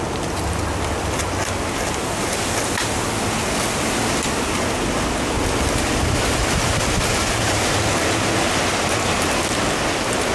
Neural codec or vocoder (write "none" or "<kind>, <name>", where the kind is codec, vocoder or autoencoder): none